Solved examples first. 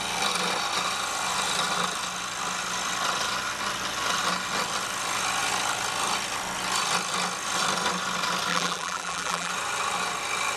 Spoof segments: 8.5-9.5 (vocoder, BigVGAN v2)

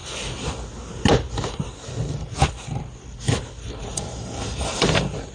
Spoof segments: 3.9-5.3 (vocoder, BigVGAN v2)